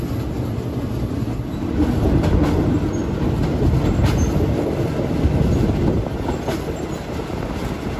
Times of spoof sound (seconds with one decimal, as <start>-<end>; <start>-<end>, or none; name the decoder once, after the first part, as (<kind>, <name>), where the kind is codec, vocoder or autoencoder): none